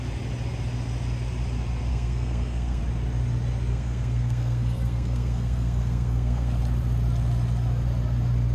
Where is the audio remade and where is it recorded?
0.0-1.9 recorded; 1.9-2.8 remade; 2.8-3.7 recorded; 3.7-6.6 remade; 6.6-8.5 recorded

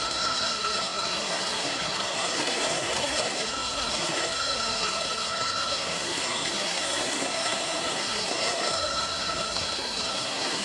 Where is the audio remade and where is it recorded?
0.0-10.6 remade

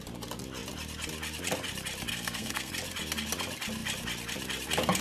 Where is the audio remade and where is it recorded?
0.0-2.1 recorded; 2.1-2.7 remade; 2.7-5.0 recorded

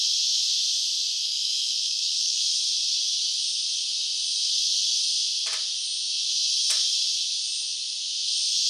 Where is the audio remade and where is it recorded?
0.0-1.2 recorded; 1.2-2.4 remade; 2.4-8.7 recorded

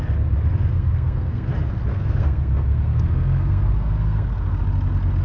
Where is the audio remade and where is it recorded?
0.0-0.7 recorded; 0.7-1.5 remade; 1.5-1.9 recorded; 1.9-4.6 remade; 4.6-5.2 recorded